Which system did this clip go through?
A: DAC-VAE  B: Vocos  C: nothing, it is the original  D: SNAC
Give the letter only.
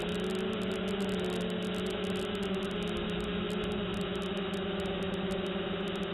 C